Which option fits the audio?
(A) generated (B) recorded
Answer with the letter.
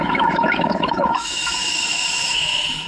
A